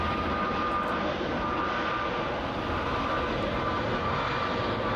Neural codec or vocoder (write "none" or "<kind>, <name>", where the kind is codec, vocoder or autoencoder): none